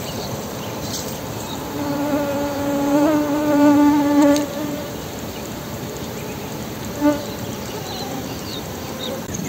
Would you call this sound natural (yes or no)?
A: no